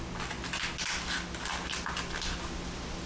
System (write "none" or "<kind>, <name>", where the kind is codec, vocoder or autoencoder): none